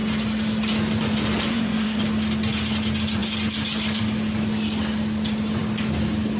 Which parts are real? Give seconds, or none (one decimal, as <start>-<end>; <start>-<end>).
0.0-1.5; 2.0-6.4

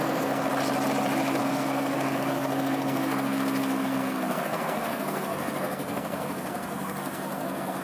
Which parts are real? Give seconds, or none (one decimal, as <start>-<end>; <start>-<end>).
0.5-1.4

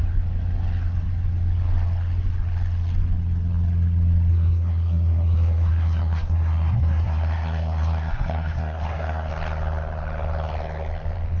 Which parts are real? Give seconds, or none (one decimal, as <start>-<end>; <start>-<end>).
0.0-4.3; 9.3-11.4

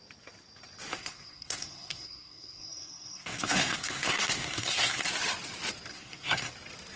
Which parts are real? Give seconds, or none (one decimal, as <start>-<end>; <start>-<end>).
0.0-0.9; 5.1-5.9; 6.5-7.0